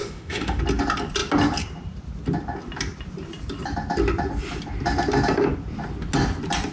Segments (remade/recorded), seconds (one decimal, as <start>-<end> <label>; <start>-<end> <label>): 0.0-0.6 remade; 0.6-6.7 recorded